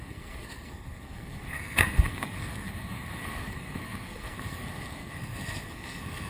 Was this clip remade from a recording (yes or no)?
yes